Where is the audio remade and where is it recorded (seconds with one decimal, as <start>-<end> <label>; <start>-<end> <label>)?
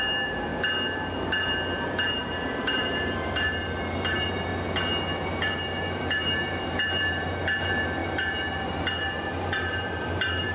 0.0-0.5 remade; 0.5-1.7 recorded; 1.7-4.5 remade; 4.5-5.4 recorded; 5.4-10.5 remade